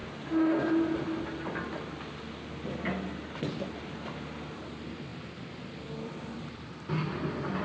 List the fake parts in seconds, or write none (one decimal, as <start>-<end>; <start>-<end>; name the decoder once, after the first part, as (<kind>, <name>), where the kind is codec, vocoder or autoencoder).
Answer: 5.1-7.6 (vocoder, BigVGAN v2)